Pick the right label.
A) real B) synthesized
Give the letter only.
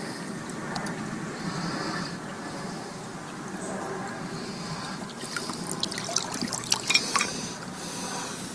A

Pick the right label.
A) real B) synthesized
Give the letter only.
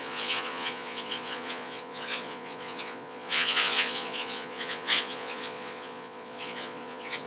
B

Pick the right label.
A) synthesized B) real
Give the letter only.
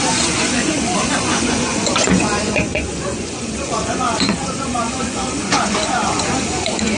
A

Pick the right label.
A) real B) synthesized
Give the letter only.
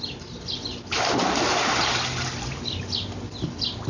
A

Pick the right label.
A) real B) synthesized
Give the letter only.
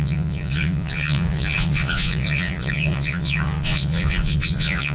B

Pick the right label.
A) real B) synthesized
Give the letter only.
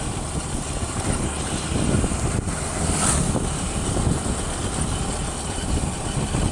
A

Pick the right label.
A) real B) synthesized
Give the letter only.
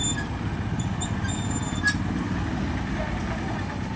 A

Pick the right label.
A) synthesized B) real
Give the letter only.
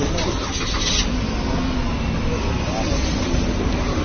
B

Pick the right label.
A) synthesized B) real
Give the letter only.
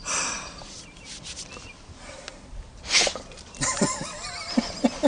B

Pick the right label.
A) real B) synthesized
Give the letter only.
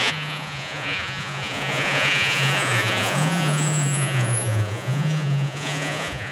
B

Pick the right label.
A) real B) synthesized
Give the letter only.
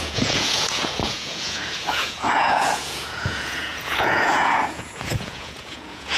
B